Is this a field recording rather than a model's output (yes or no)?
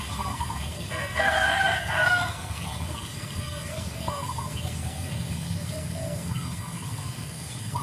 no